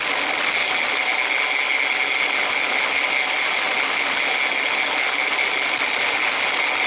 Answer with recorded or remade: recorded